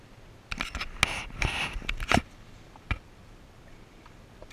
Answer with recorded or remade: recorded